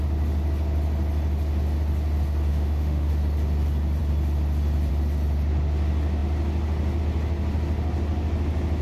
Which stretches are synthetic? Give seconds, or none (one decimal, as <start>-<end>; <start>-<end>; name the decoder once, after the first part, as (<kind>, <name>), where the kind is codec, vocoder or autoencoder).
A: 2.5-3.1 (autoencoder, DAC-VAE)

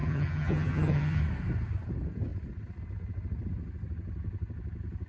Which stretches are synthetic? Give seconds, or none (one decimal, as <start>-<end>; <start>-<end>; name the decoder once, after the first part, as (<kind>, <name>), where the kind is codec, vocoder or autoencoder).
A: 0.0-1.2 (vocoder, HiFi-GAN)